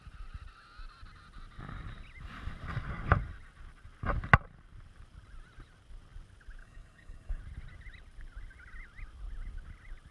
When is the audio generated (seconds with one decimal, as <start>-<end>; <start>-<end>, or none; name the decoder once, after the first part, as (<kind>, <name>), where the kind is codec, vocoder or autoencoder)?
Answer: 6.6-7.4 (codec, DAC)